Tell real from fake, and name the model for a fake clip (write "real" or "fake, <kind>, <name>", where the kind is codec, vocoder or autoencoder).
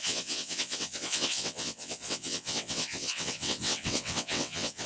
fake, vocoder, WaveNeXt